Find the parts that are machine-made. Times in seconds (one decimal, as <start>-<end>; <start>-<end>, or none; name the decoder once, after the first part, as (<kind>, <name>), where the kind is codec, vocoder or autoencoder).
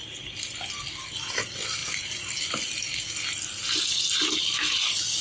none